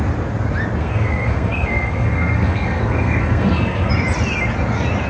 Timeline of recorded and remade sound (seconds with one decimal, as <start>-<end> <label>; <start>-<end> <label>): 0.0-0.8 recorded; 0.8-3.9 remade; 3.9-5.1 recorded